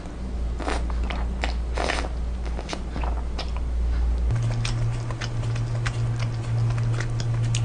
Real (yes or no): yes